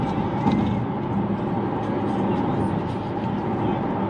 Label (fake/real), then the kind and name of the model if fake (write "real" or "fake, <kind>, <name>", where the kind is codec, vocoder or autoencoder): real